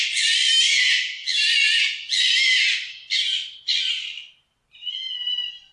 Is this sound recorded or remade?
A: recorded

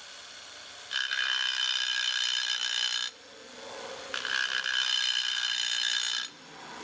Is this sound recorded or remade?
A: recorded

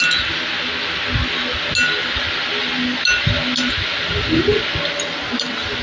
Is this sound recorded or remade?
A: recorded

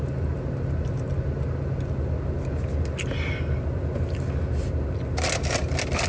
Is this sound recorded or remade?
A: recorded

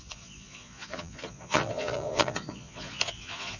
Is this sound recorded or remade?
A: remade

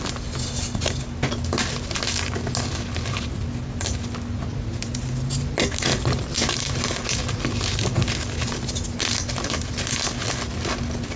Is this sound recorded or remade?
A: recorded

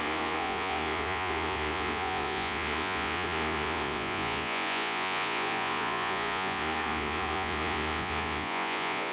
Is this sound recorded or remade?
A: remade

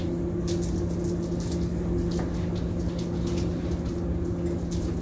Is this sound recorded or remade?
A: recorded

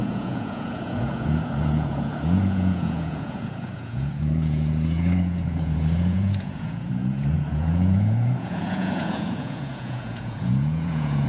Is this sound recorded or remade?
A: remade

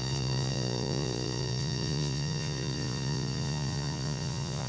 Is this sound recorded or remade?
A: remade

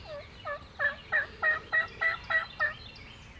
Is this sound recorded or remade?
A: recorded